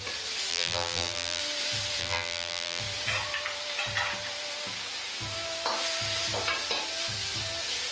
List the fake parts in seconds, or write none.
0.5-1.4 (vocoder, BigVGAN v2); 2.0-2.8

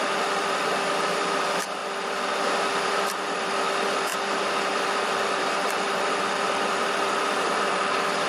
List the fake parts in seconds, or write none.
0.0-1.8 (vocoder, BigVGAN v2); 2.8-4.1; 4.6-8.3

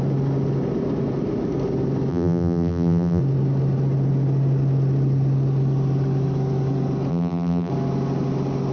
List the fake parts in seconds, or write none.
2.1-3.2 (vocoder, BigVGAN v2); 7.1-7.7

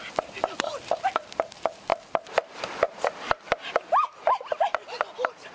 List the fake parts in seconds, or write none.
none

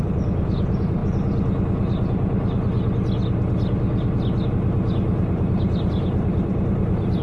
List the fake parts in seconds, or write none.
0.0-1.0 (vocoder, BigVGAN v2); 4.5-7.2